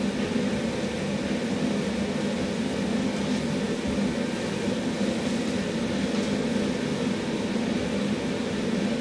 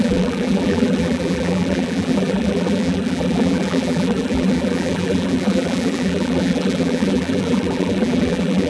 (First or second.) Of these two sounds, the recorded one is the first